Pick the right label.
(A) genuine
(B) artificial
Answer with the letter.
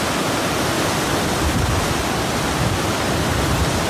A